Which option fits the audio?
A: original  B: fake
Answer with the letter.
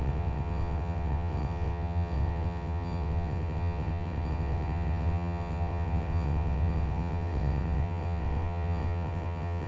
B